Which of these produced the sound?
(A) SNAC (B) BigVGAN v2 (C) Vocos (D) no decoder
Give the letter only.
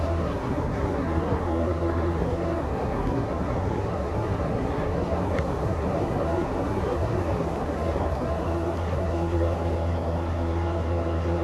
A